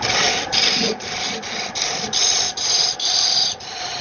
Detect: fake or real real